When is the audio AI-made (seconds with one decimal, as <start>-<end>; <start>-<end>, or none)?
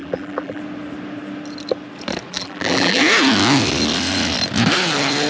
0.0-0.6; 2.3-3.0